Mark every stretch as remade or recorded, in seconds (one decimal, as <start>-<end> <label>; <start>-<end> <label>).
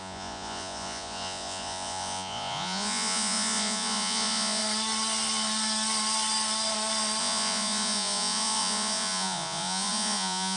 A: 0.0-4.6 remade; 4.6-7.2 recorded; 7.2-10.6 remade